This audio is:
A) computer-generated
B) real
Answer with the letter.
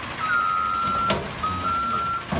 B